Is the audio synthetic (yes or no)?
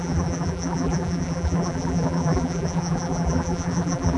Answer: yes